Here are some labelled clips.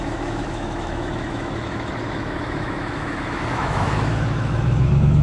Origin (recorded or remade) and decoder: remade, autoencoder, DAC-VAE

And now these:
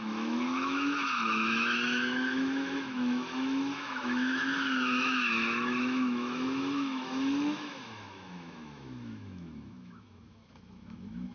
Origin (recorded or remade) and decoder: remade, autoencoder, DAC-VAE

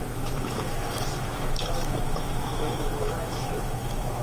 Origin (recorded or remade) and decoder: remade, autoencoder, DAC-VAE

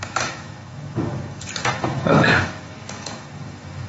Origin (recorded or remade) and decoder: remade, autoencoder, DAC-VAE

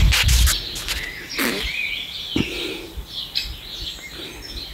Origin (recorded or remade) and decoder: recorded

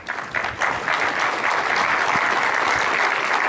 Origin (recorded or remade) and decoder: recorded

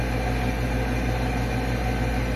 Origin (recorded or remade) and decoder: recorded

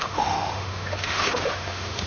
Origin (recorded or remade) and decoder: remade, autoencoder, DAC-VAE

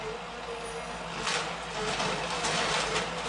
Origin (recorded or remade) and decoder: recorded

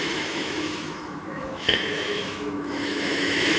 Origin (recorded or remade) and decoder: remade, autoencoder, DAC-VAE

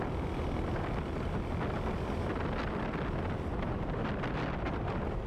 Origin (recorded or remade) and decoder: recorded